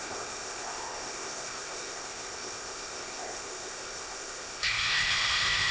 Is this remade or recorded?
remade